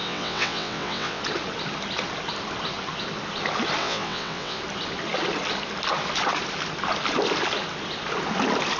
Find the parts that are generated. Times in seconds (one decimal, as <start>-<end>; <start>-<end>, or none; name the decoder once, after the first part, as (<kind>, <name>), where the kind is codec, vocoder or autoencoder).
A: 0.0-1.2 (vocoder, WaveNeXt); 3.8-4.6